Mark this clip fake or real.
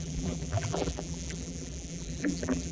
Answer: fake